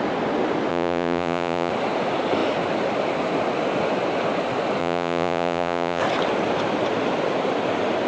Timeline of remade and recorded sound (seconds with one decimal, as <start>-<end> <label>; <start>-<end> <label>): 0.0-0.7 recorded; 0.7-1.7 remade; 1.7-4.8 recorded; 4.8-6.0 remade; 6.0-8.1 recorded